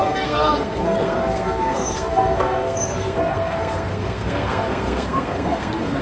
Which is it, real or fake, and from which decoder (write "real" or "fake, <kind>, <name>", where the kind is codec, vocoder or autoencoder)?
fake, codec, SNAC